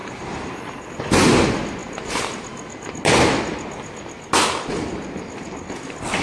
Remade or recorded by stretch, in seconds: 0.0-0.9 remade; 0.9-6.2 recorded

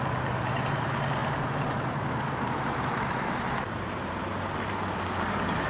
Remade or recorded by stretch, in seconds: 0.0-4.3 remade; 4.3-5.2 recorded; 5.2-5.7 remade